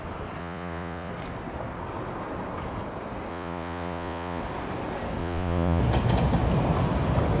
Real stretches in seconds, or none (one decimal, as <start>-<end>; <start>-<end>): 0.0-0.4; 1.1-3.3; 4.4-5.2; 5.8-7.4